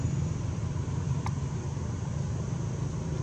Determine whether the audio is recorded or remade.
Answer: recorded